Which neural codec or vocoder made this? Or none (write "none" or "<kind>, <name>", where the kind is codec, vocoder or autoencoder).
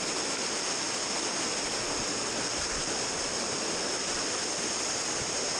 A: none